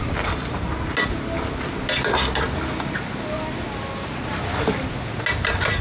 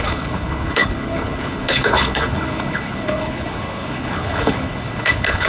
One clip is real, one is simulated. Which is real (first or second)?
first